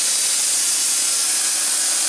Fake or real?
real